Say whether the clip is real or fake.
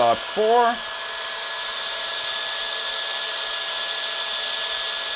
real